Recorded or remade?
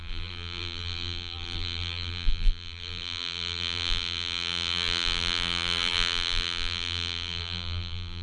remade